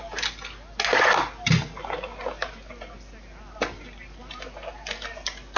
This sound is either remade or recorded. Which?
recorded